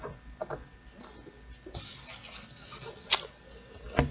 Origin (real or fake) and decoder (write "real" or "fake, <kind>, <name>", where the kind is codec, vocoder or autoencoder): real